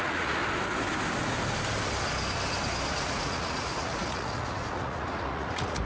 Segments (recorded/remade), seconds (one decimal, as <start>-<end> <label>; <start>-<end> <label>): 0.0-0.4 remade; 0.4-2.9 recorded; 2.9-5.8 remade